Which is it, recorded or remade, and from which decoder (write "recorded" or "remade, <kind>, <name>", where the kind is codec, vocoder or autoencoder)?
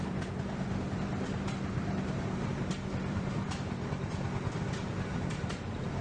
remade, vocoder, BigVGAN v2